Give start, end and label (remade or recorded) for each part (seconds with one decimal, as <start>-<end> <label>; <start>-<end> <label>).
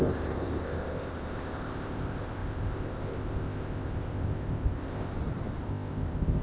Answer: 0.0-5.1 remade; 5.1-5.6 recorded; 5.6-6.4 remade